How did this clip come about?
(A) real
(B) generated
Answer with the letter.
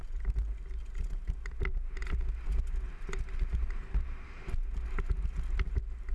A